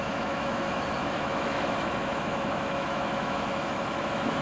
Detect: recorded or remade remade